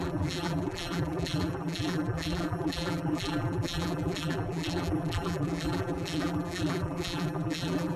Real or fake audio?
fake